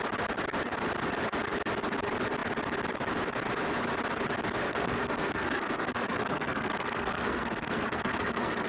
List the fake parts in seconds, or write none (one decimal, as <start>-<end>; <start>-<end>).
4.7-8.7